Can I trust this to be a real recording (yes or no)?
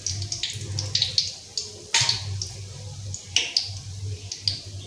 yes